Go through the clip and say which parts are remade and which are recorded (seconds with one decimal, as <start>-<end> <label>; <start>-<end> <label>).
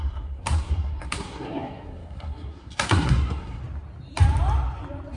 0.0-3.6 remade; 3.6-5.2 recorded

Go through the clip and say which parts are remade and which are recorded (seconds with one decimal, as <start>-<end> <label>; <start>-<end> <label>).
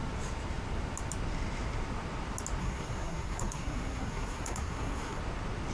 0.0-2.6 recorded; 2.6-5.2 remade; 5.2-5.7 recorded